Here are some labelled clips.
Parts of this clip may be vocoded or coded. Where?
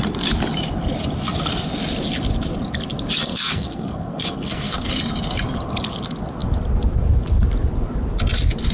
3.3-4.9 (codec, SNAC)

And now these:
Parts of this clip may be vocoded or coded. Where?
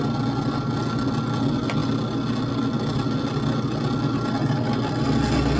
none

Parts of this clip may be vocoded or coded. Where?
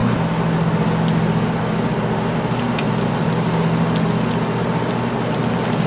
none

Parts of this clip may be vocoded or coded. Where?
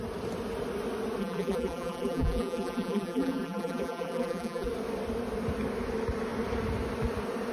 1.2-4.7 (vocoder, BigVGAN v2)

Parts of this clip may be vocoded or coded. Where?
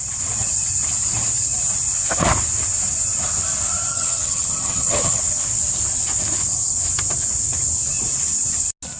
3.9-5.2 (vocoder, HiFi-GAN)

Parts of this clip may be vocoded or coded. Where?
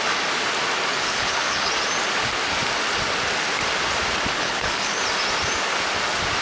0.9-1.7 (codec, HILCodec); 4.3-5.0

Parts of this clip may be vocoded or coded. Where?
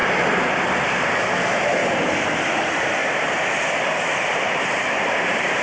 0.0-0.9 (vocoder, BigVGAN v2); 1.8-5.6